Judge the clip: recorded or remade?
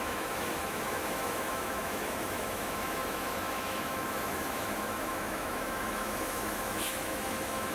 remade